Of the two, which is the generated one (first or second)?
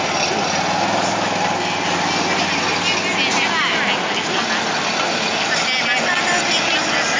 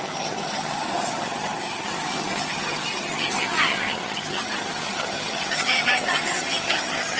second